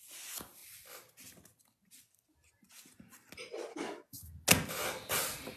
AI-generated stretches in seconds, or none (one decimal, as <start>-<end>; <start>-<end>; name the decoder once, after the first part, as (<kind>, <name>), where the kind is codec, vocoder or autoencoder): 3.7-4.2 (codec, DAC)